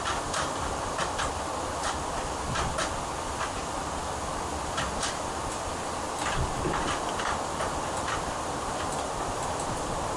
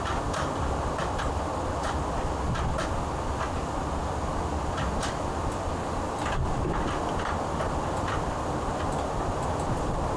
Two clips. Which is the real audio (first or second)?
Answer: second